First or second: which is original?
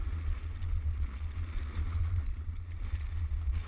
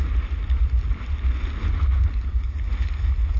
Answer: second